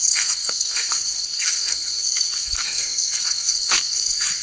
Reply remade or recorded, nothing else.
remade